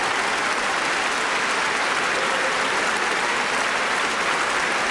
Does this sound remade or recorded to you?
recorded